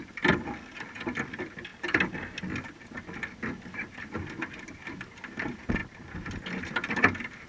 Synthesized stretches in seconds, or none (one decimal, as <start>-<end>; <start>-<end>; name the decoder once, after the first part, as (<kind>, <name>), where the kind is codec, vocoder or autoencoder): none

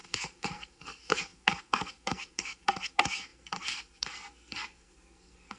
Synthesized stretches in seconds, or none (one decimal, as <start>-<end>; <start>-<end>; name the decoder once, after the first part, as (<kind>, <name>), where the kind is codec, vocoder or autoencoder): 0.0-5.6 (codec, SNAC)

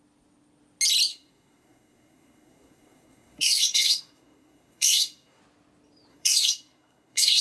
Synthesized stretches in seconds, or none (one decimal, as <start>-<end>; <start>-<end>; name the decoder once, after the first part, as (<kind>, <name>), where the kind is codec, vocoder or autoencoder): 1.1-5.4 (codec, SNAC); 6.1-7.4

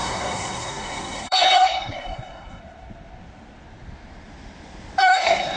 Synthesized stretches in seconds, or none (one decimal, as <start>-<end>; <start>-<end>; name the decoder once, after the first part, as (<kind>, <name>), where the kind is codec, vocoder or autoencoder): 0.0-2.6 (codec, SNAC); 5.0-5.6

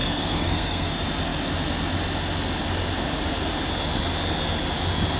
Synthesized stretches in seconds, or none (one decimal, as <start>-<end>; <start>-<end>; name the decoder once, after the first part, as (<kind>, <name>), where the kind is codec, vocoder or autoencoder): 0.0-0.9 (codec, SNAC)

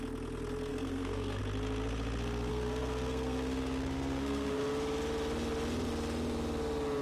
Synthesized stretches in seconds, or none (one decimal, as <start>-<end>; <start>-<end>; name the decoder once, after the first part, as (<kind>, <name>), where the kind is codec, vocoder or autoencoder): 0.7-1.4 (codec, SNAC); 2.5-4.6

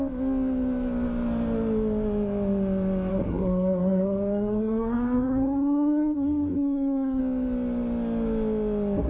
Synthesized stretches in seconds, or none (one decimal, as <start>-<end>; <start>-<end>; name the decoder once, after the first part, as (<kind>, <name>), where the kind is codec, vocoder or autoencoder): 3.1-7.2 (codec, SNAC)

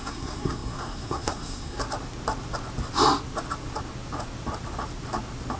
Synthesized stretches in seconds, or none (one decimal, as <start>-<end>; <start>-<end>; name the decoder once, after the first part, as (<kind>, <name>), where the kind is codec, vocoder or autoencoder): 0.0-1.8 (codec, SNAC)